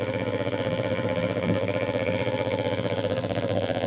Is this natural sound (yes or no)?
no